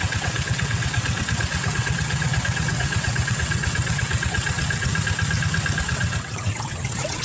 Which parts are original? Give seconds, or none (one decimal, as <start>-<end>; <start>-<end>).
4.9-5.8